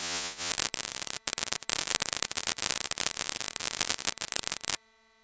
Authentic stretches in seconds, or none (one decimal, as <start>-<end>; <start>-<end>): 0.5-5.2

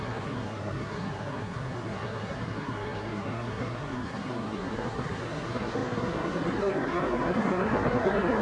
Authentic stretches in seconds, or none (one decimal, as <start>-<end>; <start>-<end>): none

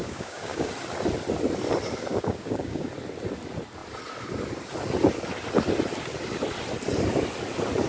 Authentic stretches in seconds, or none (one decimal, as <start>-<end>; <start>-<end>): 0.7-2.1; 2.9-7.9